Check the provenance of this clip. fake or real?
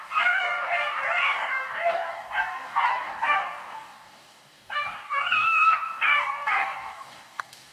fake